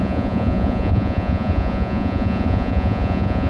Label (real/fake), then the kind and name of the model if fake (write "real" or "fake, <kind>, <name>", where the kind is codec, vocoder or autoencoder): fake, vocoder, Vocos